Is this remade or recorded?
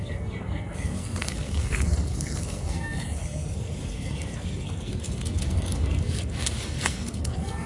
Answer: remade